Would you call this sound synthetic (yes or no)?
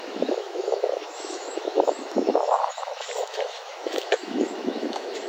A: yes